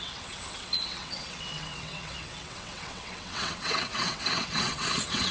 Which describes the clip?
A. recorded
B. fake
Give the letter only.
B